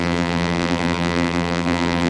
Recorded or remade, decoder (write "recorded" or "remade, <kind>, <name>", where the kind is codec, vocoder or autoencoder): remade, vocoder, BigVGAN v2